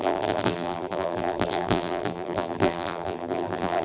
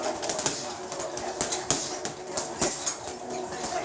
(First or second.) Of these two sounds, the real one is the second